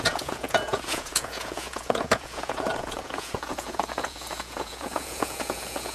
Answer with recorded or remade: remade